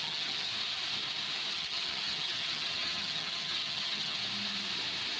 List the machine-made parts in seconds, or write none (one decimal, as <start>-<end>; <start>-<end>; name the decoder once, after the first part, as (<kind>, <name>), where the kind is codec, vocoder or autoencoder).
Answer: 0.0-0.5 (vocoder, HiFi-GAN); 1.5-4.2